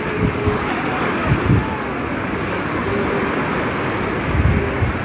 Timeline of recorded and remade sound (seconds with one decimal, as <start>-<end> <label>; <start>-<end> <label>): 0.0-1.2 remade; 1.2-1.7 recorded; 1.7-2.9 remade; 2.9-4.6 recorded; 4.6-5.0 remade